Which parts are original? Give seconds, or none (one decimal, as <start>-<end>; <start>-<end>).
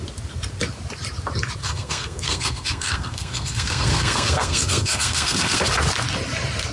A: 0.0-1.6; 5.6-6.7